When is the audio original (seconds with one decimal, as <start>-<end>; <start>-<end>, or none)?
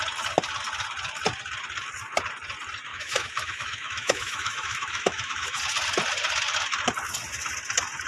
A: 0.0-2.9; 5.6-8.1